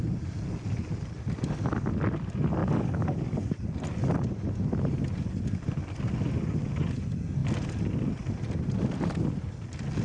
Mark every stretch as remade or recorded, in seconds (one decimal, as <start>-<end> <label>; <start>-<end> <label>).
0.0-2.6 recorded; 2.6-3.6 remade; 3.6-10.0 recorded